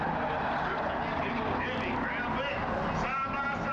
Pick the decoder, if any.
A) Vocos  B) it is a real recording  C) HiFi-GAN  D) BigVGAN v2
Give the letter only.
B